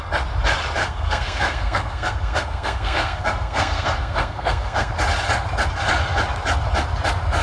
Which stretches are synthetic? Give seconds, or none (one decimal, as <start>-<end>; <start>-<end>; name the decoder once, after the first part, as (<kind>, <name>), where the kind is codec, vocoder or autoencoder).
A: 0.8-4.9 (codec, SNAC)